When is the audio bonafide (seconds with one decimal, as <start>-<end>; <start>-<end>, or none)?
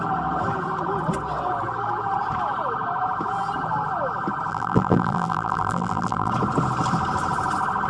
0.0-4.5; 6.3-7.9